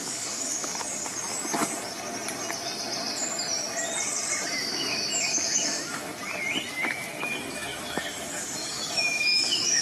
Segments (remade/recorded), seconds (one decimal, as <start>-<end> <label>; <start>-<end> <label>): 0.0-0.7 remade; 0.7-4.6 recorded; 4.6-6.1 remade; 6.1-6.7 recorded; 6.7-9.8 remade